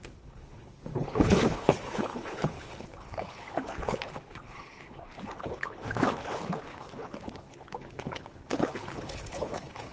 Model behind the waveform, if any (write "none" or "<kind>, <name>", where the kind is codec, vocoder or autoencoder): codec, HILCodec